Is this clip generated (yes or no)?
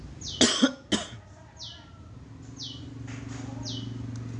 no